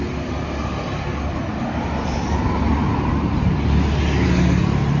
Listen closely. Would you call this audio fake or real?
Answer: real